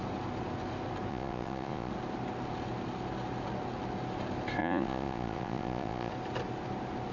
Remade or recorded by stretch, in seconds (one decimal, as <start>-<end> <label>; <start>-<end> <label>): 0.0-1.1 recorded; 1.1-1.9 remade; 1.9-4.6 recorded; 4.6-6.1 remade; 6.1-7.1 recorded